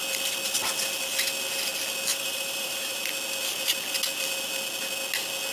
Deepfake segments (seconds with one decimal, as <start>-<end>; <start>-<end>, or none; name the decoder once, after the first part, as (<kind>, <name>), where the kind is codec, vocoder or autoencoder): 2.1-3.0 (vocoder, BigVGAN v2)